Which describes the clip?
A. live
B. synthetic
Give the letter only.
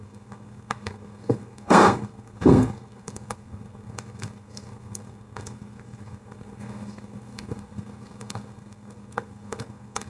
B